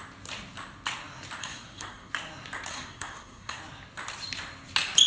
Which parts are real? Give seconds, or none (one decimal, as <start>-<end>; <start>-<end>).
0.0-1.4; 2.1-2.7; 3.6-5.1